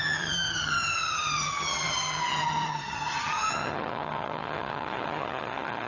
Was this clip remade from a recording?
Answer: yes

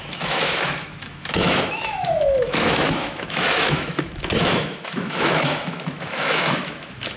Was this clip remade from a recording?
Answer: yes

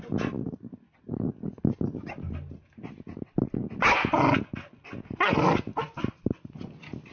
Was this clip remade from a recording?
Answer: no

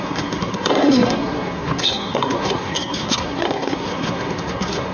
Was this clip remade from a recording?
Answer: yes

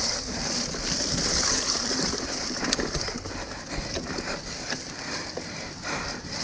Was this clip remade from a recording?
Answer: yes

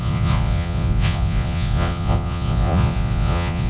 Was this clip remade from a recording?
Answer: yes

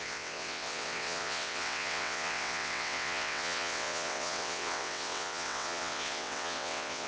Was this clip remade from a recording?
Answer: yes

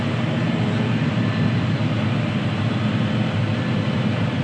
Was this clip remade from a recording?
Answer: no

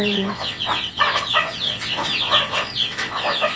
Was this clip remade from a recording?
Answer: yes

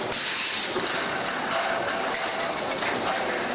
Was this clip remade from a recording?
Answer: no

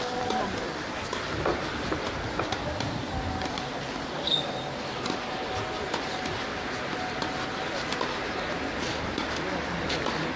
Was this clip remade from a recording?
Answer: no